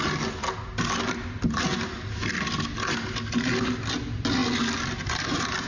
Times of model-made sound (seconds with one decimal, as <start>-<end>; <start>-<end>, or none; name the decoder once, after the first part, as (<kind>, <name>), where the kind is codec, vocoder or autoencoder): none